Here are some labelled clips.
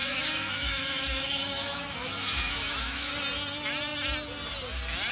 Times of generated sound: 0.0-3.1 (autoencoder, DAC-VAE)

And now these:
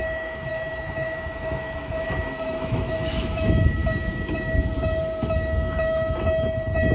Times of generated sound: 0.0-3.8 (autoencoder, DAC-VAE); 5.2-6.9